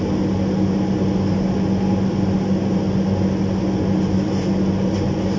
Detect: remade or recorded recorded